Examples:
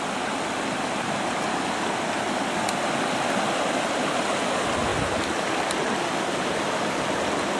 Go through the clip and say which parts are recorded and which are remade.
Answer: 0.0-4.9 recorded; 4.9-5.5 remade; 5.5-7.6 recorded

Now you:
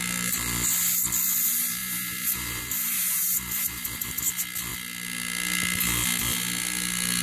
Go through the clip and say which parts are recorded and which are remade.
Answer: 0.0-1.8 recorded; 1.8-4.2 remade; 4.2-7.2 recorded

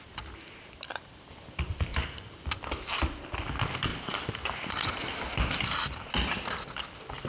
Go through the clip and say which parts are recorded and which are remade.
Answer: 0.0-1.9 recorded; 1.9-2.5 remade; 2.5-3.9 recorded; 3.9-4.7 remade; 4.7-7.3 recorded

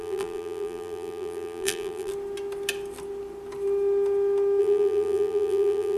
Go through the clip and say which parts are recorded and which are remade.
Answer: 0.0-2.1 remade; 2.1-4.6 recorded; 4.6-6.0 remade

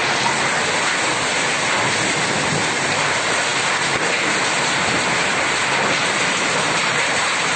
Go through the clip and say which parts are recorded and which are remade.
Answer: 0.0-6.0 recorded; 6.0-7.6 remade